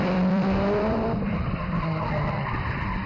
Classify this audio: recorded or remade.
remade